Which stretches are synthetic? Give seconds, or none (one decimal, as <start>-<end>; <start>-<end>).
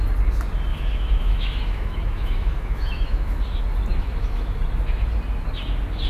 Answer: 0.7-3.4; 3.9-4.6